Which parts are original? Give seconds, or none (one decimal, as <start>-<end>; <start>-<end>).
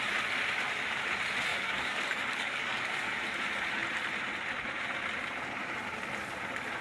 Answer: 0.0-1.5; 3.2-6.8